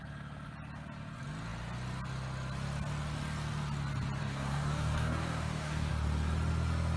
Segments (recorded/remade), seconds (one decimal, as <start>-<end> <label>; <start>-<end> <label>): 0.0-4.2 recorded; 4.2-5.9 remade; 5.9-7.0 recorded